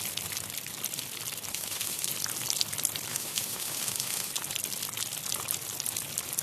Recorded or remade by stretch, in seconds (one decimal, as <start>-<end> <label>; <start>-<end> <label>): 0.0-1.5 recorded; 1.5-2.1 remade; 2.1-3.1 recorded; 3.1-4.3 remade; 4.3-6.4 recorded